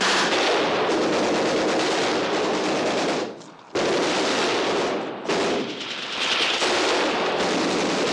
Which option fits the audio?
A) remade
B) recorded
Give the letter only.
B